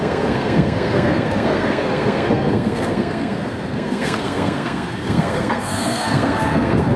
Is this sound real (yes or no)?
no